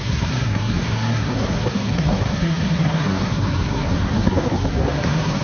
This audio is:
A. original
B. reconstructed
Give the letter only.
B